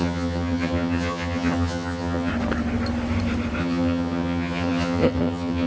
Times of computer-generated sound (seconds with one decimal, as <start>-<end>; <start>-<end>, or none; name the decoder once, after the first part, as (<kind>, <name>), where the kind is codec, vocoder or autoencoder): 0.0-2.3 (vocoder, HiFi-GAN); 3.6-5.7